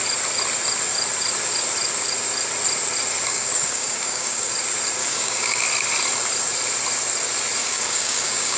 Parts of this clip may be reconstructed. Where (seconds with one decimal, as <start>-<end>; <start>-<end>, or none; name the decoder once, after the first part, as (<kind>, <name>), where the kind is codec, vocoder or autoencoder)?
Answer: 3.3-4.5 (codec, DAC); 5.0-5.6; 7.6-8.6